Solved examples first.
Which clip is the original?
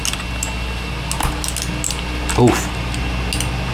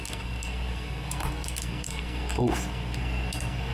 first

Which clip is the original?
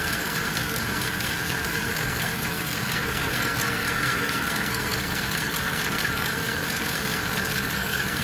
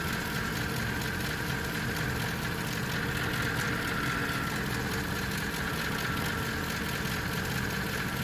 second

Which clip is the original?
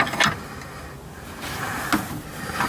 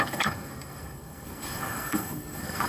first